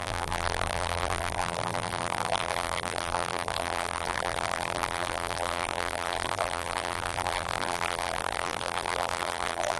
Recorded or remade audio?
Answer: remade